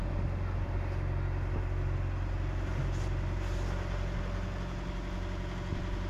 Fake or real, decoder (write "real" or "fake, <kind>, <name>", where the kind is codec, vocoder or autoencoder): real